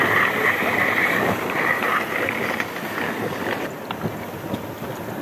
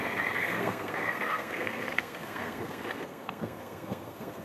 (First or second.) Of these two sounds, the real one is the first